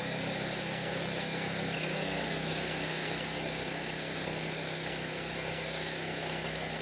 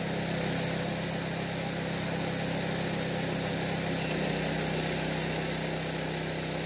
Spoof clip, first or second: first